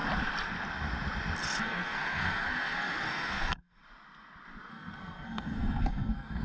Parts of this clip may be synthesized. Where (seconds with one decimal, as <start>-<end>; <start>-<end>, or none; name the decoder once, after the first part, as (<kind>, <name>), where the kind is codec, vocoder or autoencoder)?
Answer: 1.6-3.8 (codec, SNAC); 4.7-6.4